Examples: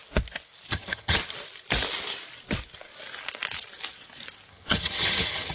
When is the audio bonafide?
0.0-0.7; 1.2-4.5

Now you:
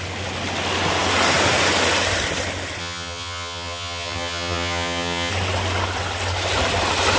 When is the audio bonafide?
0.0-2.8; 5.3-7.2

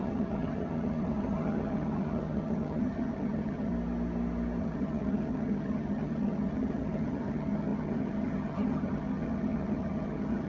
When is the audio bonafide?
3.7-4.6